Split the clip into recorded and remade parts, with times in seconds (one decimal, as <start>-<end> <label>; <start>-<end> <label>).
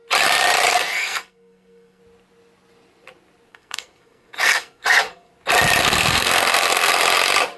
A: 0.0-0.7 recorded; 0.7-2.0 remade; 2.0-3.5 recorded; 3.5-5.3 remade; 5.3-5.8 recorded; 5.8-6.9 remade; 6.9-7.6 recorded